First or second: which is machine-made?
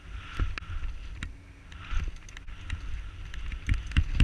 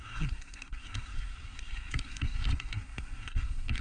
second